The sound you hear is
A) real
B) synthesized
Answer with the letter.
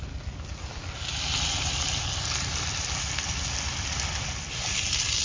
A